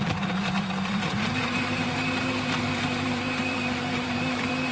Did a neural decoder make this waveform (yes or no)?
yes